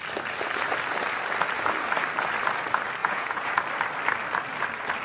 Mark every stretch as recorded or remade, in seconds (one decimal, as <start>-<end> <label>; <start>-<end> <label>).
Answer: 0.0-3.0 recorded; 3.0-3.6 remade; 3.6-5.0 recorded